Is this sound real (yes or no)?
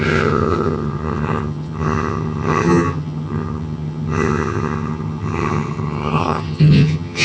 no